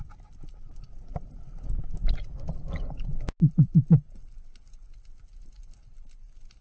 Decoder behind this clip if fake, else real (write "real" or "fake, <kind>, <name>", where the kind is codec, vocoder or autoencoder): real